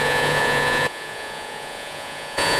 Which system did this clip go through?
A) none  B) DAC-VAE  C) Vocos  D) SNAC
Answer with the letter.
C